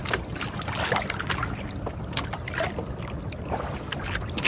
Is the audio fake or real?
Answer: real